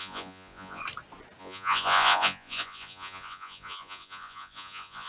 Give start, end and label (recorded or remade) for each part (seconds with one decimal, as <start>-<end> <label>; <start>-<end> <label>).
0.0-0.8 remade; 0.8-1.4 recorded; 1.4-5.1 remade